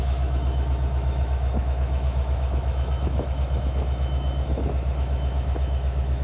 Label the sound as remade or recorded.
remade